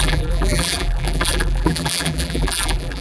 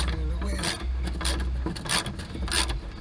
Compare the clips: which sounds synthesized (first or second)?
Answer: first